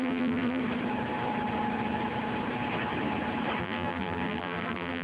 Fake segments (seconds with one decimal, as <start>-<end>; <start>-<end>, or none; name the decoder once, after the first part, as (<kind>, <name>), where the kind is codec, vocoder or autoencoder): 0.0-0.6 (vocoder, BigVGAN v2); 3.6-5.0

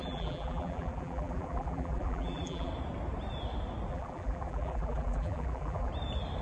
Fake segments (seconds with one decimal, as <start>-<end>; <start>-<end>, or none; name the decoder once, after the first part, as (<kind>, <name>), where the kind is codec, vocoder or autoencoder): 0.0-2.7 (vocoder, BigVGAN v2); 3.9-5.9